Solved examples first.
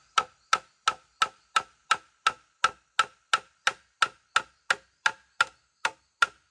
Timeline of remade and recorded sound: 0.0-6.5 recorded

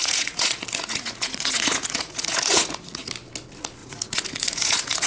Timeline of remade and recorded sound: 0.0-3.1 remade; 3.1-3.8 recorded; 3.8-5.1 remade

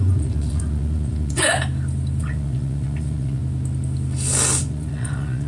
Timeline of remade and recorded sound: 0.0-1.5 remade; 1.5-2.2 recorded; 2.2-3.4 remade; 3.4-4.6 recorded; 4.6-5.5 remade

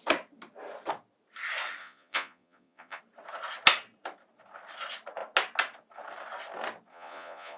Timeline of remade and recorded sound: 0.0-1.8 recorded; 1.8-3.0 remade; 3.0-6.9 recorded; 6.9-7.6 remade

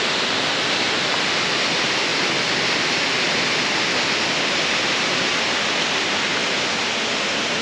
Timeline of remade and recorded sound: 0.0-7.6 recorded

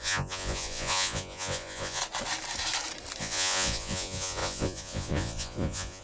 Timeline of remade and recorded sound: 0.0-2.0 remade; 2.0-3.2 recorded; 3.2-6.0 remade

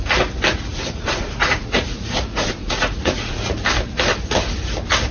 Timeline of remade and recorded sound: 0.0-0.5 recorded; 0.5-3.6 remade; 3.6-5.1 recorded

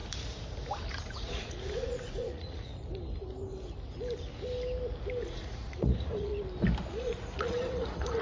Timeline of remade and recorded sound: 0.0-0.9 recorded; 0.9-2.7 remade; 2.7-5.2 recorded; 5.2-6.3 remade; 6.3-6.9 recorded; 6.9-8.2 remade